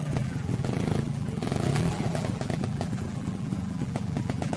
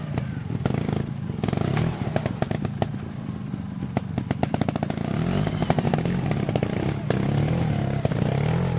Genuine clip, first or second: second